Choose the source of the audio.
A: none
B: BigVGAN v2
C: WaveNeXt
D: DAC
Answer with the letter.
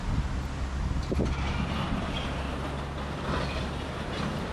A